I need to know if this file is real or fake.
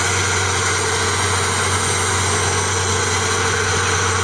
fake